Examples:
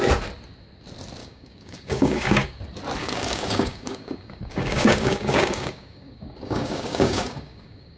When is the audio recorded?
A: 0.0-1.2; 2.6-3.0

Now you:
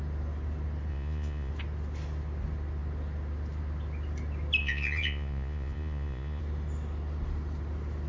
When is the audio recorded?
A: 0.0-0.9; 1.5-4.6; 6.4-8.1

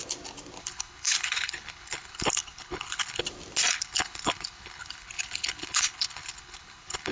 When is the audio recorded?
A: 0.0-0.6; 3.2-3.7

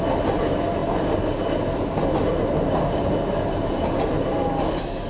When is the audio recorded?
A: 0.0-5.1

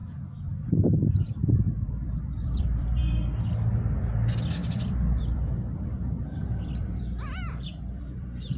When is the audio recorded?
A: 3.0-3.8

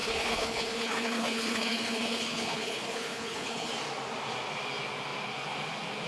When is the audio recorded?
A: 3.7-6.1